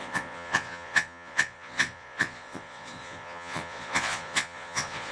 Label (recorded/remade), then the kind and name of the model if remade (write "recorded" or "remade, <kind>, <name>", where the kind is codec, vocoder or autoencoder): remade, vocoder, Vocos